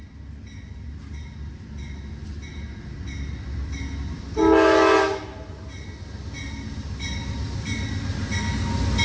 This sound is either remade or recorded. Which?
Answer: recorded